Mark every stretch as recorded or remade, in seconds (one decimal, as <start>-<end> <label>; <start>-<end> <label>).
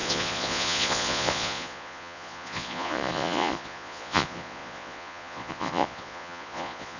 0.0-7.0 remade